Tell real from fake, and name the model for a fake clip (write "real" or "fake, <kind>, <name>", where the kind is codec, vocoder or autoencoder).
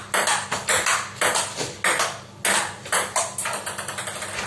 real